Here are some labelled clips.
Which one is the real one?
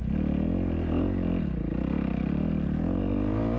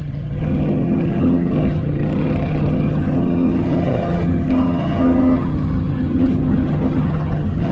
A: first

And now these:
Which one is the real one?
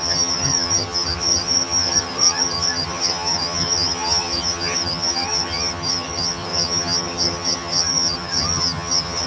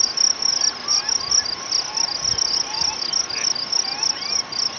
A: second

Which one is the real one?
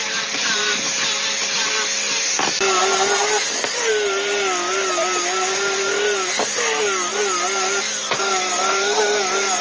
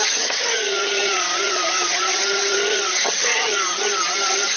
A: first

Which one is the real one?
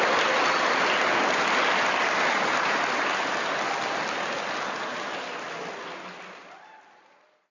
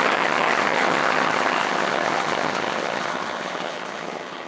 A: first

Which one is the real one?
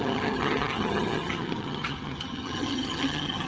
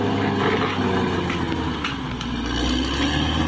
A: second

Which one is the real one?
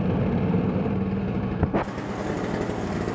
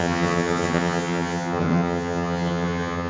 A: first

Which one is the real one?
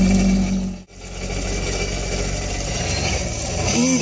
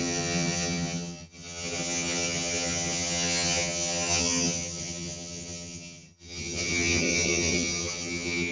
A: first